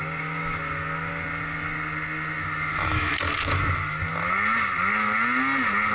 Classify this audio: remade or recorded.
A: recorded